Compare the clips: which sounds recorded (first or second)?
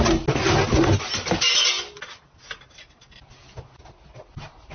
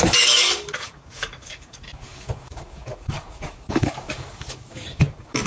first